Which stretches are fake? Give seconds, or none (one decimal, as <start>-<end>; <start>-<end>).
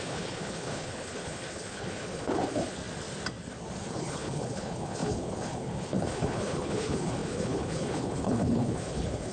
0.0-2.8; 3.9-9.3